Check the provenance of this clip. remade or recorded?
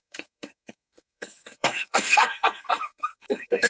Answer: remade